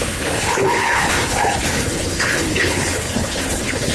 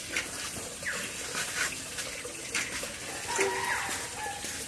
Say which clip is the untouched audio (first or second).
second